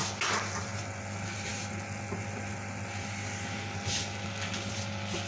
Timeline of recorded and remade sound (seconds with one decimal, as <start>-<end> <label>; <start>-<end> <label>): 0.0-5.3 recorded